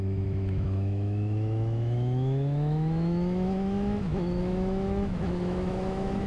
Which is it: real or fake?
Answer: fake